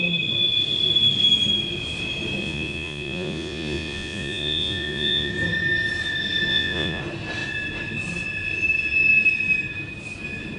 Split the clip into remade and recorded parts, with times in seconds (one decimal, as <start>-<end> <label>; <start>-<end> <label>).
0.0-2.4 recorded; 2.4-5.3 remade; 5.3-6.5 recorded; 6.5-7.0 remade; 7.0-10.6 recorded